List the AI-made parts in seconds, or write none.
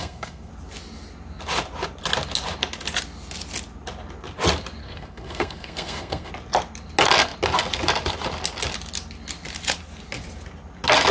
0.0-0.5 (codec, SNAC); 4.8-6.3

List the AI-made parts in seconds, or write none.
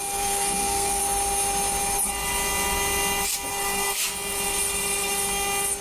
0.0-1.0 (codec, SNAC); 3.5-4.0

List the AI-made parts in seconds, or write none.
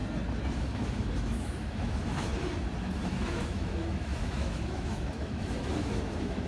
0.6-2.3 (autoencoder, DAC-VAE); 2.8-6.5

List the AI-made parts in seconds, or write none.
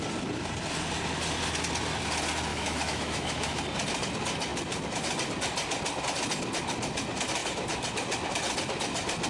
2.5-3.6 (autoencoder, DAC-VAE)